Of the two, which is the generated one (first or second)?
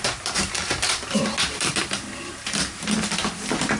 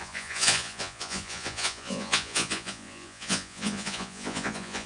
second